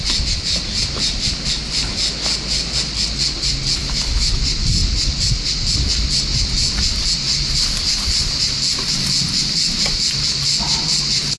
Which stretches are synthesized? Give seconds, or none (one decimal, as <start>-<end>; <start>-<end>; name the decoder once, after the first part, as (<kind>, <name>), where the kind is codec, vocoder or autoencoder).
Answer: 3.8-4.3 (autoencoder, DAC-VAE)